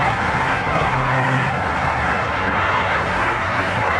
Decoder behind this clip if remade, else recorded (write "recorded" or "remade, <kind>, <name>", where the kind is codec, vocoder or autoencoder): remade, codec, SNAC